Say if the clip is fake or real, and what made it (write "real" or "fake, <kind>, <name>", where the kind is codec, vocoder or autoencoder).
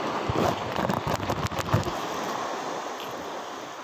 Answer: real